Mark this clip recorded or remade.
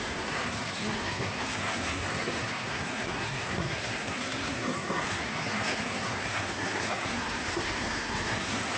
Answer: remade